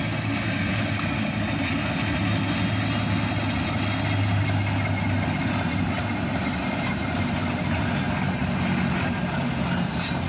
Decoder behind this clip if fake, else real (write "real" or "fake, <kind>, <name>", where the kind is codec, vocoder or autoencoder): real